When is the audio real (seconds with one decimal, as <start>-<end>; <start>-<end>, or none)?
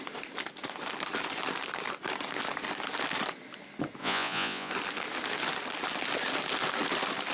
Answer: 0.0-4.0; 4.7-7.3